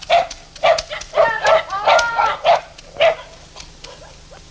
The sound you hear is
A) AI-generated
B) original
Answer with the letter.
B